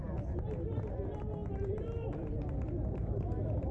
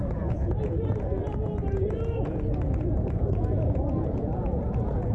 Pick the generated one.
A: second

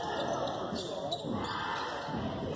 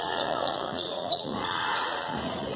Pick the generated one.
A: second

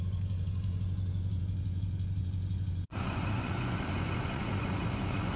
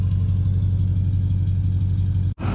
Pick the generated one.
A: first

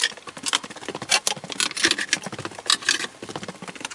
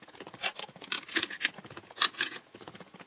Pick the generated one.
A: second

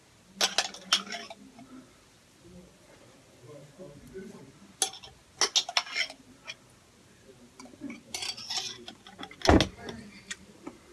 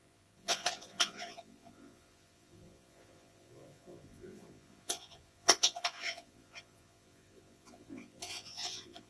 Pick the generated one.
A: second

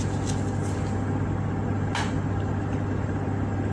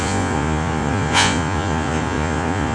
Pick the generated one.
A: second